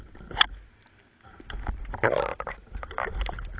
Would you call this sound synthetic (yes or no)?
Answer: no